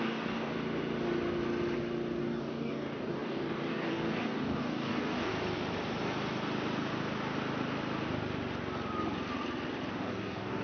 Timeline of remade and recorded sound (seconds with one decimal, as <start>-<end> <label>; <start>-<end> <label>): 0.0-0.5 remade; 0.5-2.2 recorded; 2.2-5.3 remade; 5.3-9.9 recorded; 9.9-10.6 remade